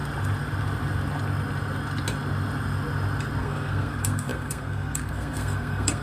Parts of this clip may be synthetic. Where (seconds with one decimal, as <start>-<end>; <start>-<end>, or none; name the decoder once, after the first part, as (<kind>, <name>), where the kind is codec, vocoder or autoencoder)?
3.4-6.0 (codec, SNAC)